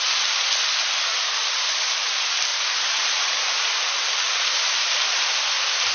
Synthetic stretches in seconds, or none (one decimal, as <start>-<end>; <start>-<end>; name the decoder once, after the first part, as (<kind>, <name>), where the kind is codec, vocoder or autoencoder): 1.1-2.1 (vocoder, BigVGAN v2); 2.5-3.3